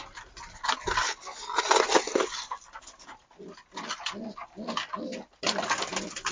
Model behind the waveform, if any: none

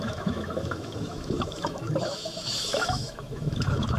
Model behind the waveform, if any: autoencoder, DAC-VAE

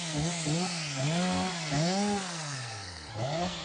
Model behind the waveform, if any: codec, SNAC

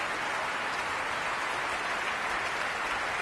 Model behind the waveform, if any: none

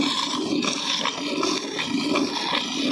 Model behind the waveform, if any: none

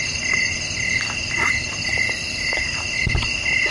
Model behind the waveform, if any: none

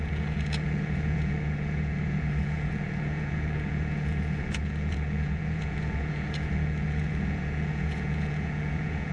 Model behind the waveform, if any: vocoder, Vocos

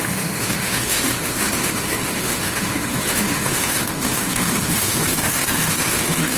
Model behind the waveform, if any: autoencoder, DAC-VAE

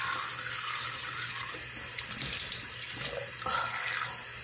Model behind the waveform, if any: none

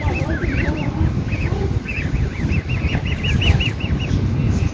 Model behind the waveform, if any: vocoder, BigVGAN v2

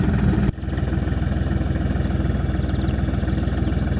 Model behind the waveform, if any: none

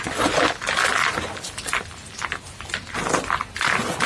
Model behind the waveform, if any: none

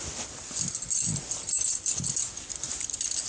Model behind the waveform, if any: none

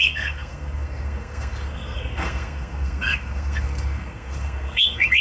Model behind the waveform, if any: codec, SNAC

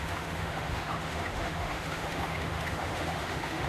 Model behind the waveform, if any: autoencoder, DAC-VAE